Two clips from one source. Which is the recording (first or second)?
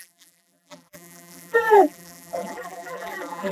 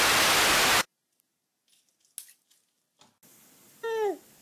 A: second